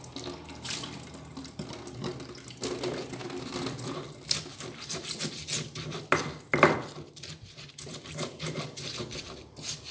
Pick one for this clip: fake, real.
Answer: real